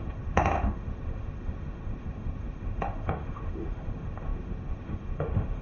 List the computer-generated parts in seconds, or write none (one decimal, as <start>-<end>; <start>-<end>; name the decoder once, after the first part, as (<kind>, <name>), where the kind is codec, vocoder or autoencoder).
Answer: 0.0-5.6 (autoencoder, DAC-VAE)